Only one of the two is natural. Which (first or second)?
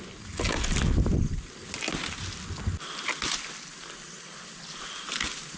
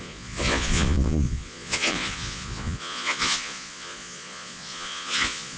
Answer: first